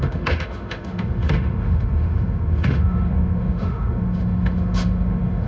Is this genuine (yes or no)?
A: no